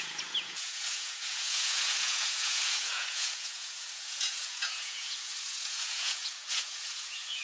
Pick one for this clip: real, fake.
fake